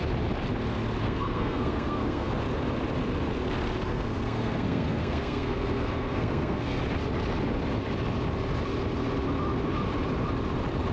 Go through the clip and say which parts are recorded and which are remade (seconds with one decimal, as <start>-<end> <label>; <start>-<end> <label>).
0.0-1.0 recorded; 1.0-2.3 remade; 2.3-3.9 recorded; 3.9-6.8 remade; 6.8-10.9 recorded